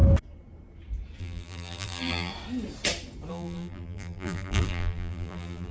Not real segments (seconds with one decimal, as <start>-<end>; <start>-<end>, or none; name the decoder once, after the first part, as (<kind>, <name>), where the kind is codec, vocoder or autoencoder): 1.2-2.3 (vocoder, BigVGAN v2); 3.3-5.7